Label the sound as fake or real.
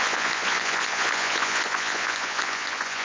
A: fake